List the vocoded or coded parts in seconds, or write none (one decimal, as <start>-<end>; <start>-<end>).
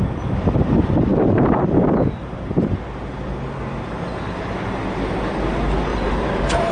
5.9-6.7